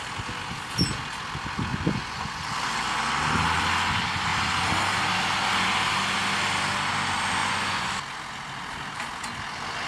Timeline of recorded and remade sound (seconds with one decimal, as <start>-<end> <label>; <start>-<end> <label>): 0.0-1.7 recorded; 1.7-2.4 remade; 2.4-7.4 recorded; 7.4-7.9 remade; 7.9-9.9 recorded